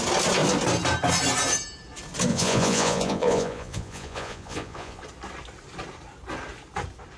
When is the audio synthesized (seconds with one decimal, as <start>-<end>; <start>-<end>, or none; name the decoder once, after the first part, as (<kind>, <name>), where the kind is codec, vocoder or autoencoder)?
2.3-5.0 (vocoder, Vocos)